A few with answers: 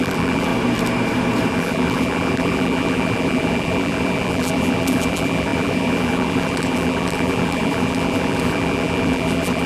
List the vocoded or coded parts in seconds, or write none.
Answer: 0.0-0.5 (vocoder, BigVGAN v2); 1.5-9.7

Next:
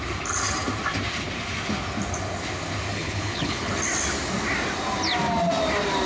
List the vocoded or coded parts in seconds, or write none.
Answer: 2.9-3.7 (codec, HILCodec)

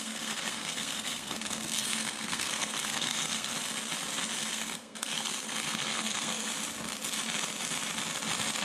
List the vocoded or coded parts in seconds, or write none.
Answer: 0.0-3.5 (codec, SNAC); 4.5-6.5

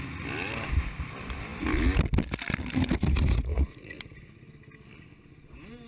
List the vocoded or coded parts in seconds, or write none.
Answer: 2.8-4.2 (vocoder, Vocos)

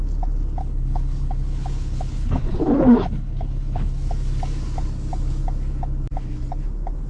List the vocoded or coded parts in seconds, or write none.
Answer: 0.6-4.3 (codec, HILCodec)

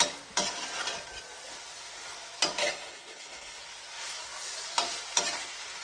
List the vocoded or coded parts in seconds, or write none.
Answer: 2.6-3.6 (codec, HILCodec)

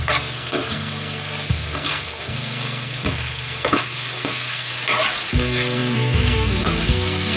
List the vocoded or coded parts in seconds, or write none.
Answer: 0.0-4.7 (codec, SNAC); 5.3-7.4